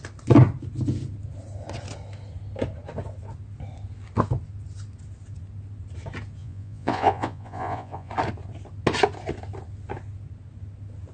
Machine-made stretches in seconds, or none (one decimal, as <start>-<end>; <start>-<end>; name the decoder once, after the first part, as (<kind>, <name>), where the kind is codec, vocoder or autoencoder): 6.4-8.1 (vocoder, Vocos)